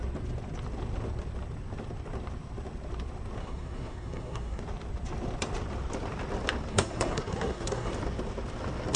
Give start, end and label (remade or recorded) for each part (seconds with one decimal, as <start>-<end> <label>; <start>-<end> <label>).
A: 0.0-3.4 recorded; 3.4-4.6 remade; 4.6-6.7 recorded; 6.7-7.9 remade; 7.9-9.0 recorded